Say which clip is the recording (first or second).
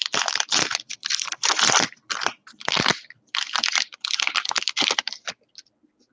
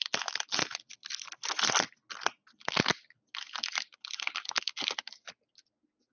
second